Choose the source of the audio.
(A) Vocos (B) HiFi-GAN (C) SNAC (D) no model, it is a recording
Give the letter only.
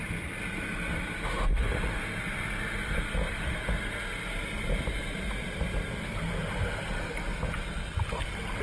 D